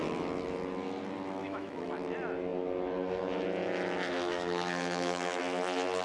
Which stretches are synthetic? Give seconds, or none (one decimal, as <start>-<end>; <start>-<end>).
1.4-1.9; 3.6-5.4